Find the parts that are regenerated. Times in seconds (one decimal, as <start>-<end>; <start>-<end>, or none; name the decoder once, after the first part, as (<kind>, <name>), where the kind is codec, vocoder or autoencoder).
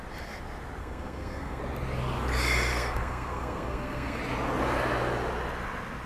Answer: 0.8-1.6 (codec, SNAC); 2.7-4.2